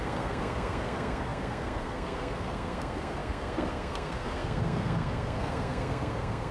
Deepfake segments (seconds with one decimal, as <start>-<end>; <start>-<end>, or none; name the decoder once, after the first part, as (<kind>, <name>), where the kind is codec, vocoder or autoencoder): 0.0-6.5 (codec, SNAC)